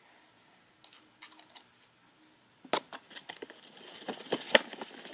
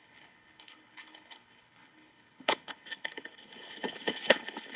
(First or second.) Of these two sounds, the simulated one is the second